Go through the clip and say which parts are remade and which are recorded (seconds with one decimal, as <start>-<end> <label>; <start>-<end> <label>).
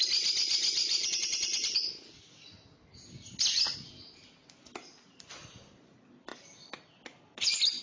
0.0-7.8 recorded